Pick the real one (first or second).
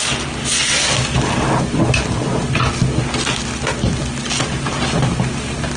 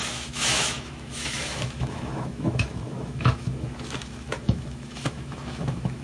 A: first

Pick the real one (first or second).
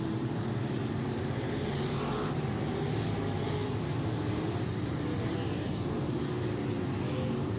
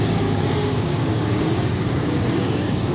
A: first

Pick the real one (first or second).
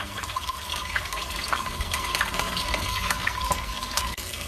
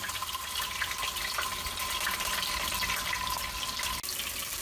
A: second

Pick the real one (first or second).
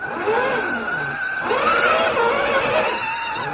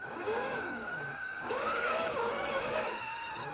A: first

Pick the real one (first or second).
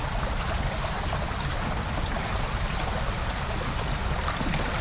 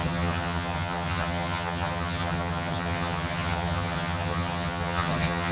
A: first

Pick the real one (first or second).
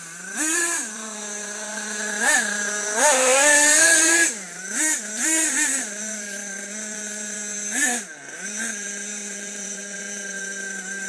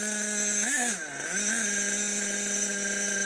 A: second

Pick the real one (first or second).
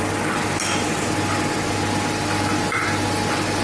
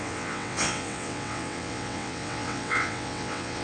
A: first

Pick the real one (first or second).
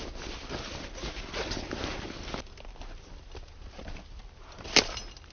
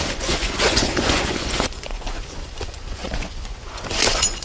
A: first